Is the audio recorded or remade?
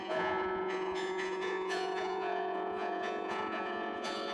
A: remade